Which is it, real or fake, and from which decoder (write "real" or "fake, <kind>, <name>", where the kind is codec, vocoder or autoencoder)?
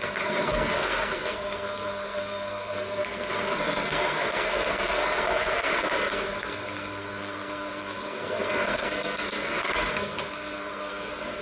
fake, codec, SNAC